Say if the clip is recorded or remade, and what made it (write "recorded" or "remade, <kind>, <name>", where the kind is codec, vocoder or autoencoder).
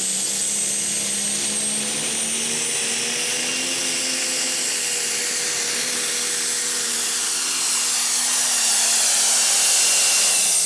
recorded